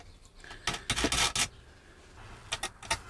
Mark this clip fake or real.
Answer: real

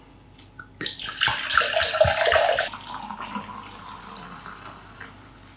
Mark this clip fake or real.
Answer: real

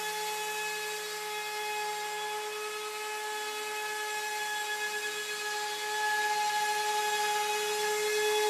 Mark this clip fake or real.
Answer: real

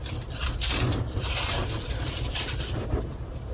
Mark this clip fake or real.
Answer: fake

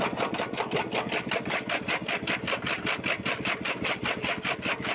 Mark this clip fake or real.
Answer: real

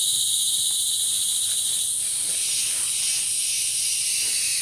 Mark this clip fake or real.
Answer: real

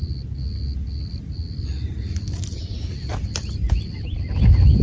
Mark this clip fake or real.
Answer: real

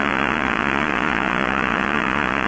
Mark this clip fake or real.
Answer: fake